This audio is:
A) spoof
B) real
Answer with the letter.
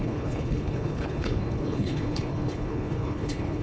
A